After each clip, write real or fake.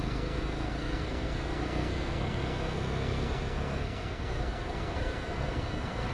fake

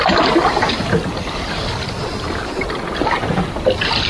real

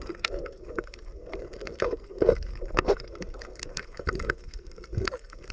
fake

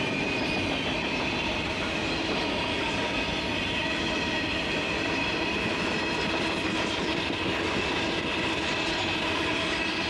real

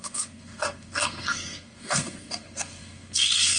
fake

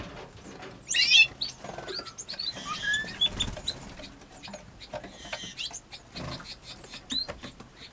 real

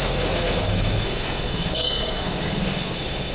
fake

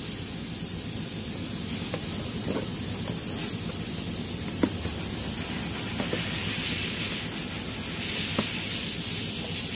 real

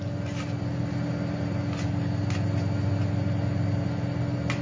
real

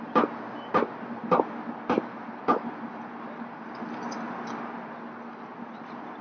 real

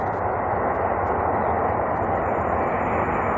real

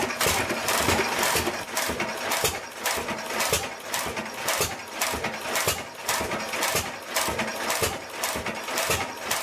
real